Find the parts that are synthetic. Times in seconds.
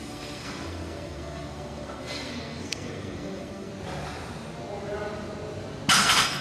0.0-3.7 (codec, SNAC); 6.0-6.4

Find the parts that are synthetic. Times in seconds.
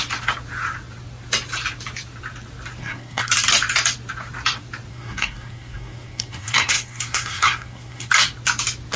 2.8-3.3 (codec, SNAC); 4.9-8.1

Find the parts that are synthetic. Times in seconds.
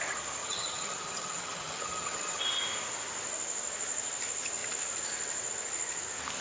0.4-2.4 (vocoder, HiFi-GAN)